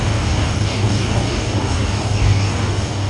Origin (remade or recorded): remade